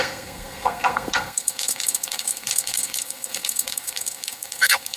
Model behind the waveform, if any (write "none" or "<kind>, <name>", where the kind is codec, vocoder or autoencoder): codec, SNAC